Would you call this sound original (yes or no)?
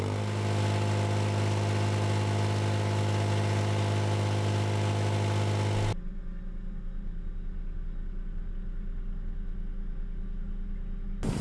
yes